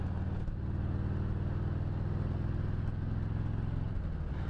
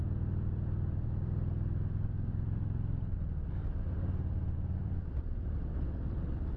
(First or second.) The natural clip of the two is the first